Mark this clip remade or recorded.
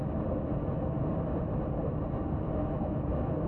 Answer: recorded